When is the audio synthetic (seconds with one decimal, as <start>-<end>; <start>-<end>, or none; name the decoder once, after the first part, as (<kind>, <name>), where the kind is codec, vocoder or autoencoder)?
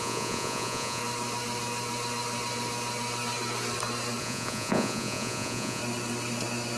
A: 0.0-1.0 (vocoder, Vocos); 4.2-5.8